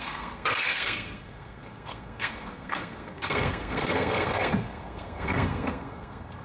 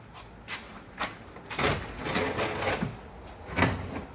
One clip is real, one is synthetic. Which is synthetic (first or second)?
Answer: first